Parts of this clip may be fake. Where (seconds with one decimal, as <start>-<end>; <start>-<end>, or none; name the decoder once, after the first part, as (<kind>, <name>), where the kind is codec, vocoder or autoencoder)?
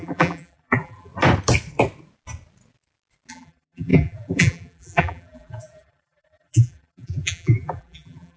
0.0-1.1 (vocoder, BigVGAN v2); 3.3-8.4